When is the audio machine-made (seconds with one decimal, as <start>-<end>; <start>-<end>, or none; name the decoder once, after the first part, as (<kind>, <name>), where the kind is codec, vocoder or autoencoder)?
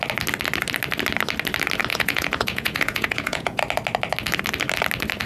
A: 1.9-3.6 (vocoder, Vocos)